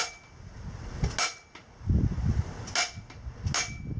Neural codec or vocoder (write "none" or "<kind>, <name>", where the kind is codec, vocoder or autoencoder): none